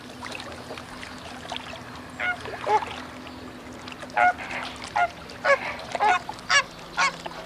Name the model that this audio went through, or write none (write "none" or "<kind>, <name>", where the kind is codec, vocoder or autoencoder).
none